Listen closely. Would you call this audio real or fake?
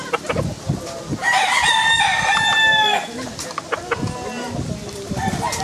real